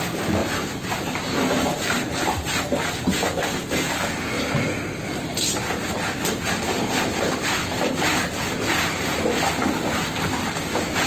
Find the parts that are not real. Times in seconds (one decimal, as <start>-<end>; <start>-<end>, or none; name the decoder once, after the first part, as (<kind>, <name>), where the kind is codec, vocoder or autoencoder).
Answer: 0.4-2.6 (vocoder, BigVGAN v2)